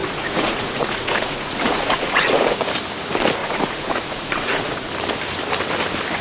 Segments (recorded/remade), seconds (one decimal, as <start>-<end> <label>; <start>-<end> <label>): 0.0-2.6 remade; 2.6-3.4 recorded; 3.4-4.9 remade; 4.9-6.2 recorded